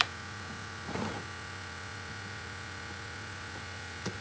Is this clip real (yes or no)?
no